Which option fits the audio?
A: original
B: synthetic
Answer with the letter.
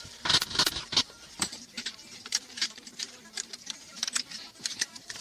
B